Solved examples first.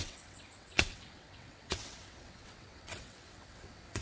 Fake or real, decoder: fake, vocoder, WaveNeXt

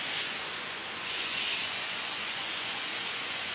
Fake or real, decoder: fake, vocoder, Vocos